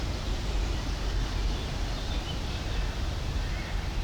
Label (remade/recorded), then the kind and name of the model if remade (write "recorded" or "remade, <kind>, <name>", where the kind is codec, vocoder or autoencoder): recorded